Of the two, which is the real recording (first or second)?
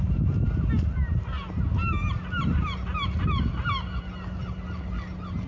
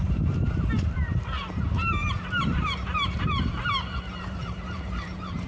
first